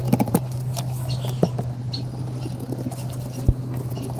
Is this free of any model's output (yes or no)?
yes